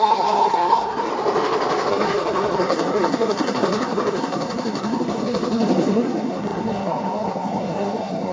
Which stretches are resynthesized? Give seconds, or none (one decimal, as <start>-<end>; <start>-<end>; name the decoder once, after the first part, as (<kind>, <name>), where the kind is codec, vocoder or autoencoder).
0.0-1.1 (codec, SNAC); 1.9-8.3